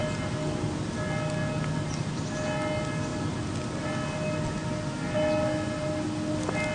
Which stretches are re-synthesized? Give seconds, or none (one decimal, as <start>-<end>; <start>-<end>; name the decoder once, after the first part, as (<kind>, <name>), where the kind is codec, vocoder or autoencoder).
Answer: none